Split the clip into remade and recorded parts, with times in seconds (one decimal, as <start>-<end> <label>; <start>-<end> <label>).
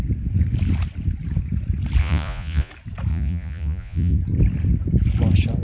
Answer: 0.0-2.0 recorded; 2.0-2.7 remade; 2.7-3.1 recorded; 3.1-4.2 remade; 4.2-5.6 recorded